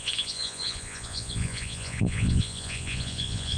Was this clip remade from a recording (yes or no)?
yes